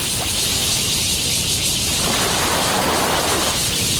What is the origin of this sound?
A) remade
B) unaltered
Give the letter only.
B